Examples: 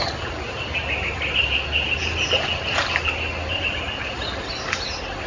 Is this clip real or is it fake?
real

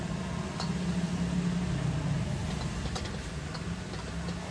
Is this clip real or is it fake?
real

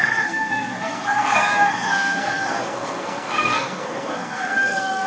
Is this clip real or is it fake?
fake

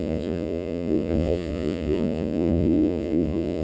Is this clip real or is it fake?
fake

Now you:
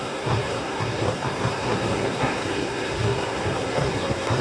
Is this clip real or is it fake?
fake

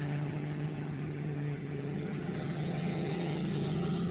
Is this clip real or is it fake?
fake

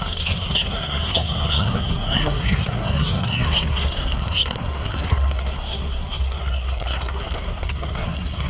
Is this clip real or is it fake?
fake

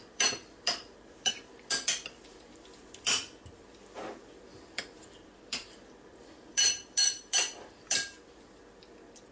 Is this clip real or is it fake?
fake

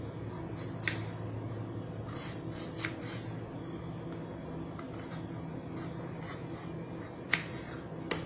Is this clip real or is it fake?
real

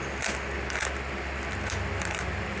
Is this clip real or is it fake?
real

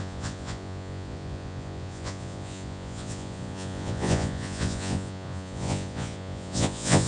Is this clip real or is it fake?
fake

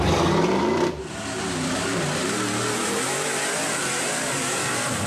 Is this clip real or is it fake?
fake